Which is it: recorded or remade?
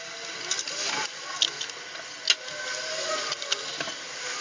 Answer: recorded